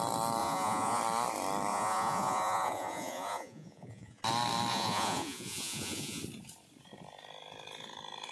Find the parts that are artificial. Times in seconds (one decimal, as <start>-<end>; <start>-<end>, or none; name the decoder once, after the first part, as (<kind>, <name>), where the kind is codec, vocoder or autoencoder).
0.4-1.0 (vocoder, Vocos); 1.7-4.2; 4.7-6.2

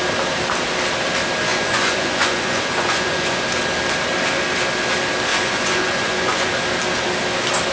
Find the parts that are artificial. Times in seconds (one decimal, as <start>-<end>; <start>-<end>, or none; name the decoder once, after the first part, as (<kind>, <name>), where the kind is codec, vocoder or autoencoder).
1.5-3.4 (vocoder, Vocos); 5.3-6.5